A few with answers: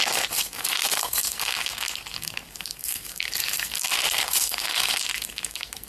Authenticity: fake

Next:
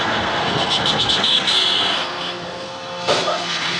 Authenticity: fake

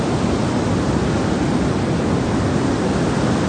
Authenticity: real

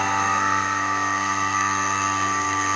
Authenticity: fake